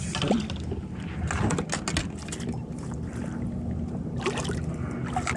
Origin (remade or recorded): recorded